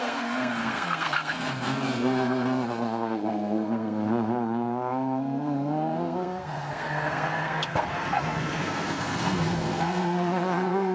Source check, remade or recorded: remade